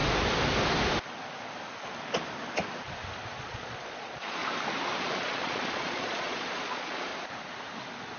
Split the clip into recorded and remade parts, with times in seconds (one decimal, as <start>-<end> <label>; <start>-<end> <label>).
0.0-3.4 recorded; 3.4-4.4 remade; 4.4-5.0 recorded; 5.0-7.1 remade; 7.1-8.2 recorded